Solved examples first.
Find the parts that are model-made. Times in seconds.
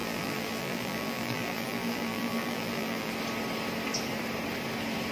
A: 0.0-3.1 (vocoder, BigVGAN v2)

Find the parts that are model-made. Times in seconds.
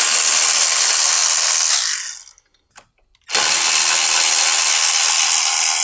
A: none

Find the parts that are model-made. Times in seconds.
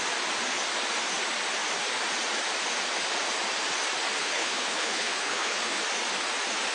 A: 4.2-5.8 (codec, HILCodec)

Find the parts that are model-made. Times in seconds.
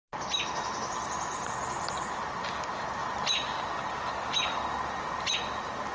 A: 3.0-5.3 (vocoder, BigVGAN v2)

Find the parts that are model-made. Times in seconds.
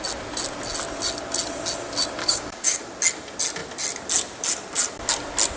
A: 2.2-2.8 (codec, DAC)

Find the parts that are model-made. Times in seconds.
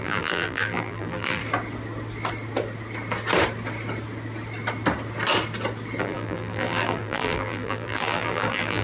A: 0.0-1.4 (vocoder, BigVGAN v2); 6.0-8.8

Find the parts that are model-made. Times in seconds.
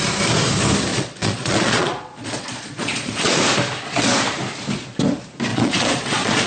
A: 0.9-3.4 (vocoder, Vocos); 5.5-6.5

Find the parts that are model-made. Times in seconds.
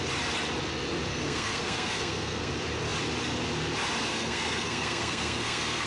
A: 1.1-2.5 (codec, SNAC); 4.1-5.9